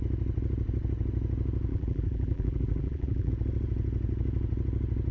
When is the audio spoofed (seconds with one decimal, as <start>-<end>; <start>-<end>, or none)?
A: 1.7-3.3